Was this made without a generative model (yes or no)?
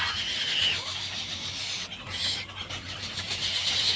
yes